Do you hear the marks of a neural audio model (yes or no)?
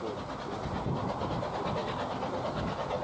no